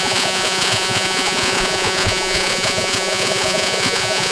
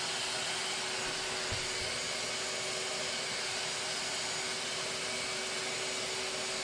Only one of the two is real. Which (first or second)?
second